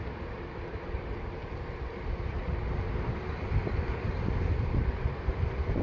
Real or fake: real